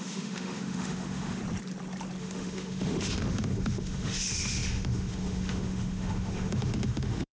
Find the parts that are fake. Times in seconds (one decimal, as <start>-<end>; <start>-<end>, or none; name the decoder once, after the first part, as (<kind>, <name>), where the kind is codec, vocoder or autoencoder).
0.0-1.4 (autoencoder, DAC-VAE); 2.2-7.3